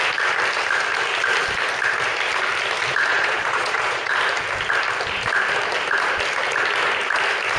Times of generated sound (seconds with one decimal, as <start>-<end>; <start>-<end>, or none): 3.1-4.1